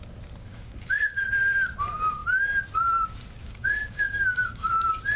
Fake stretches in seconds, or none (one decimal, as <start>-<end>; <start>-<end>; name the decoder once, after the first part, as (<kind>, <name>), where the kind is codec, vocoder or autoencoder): 0.5-1.2 (codec, DAC); 3.4-4.7